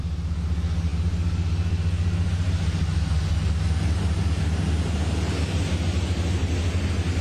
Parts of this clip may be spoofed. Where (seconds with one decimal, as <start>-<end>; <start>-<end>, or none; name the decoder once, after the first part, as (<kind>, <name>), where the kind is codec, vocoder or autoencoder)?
none